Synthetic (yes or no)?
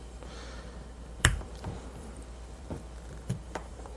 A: yes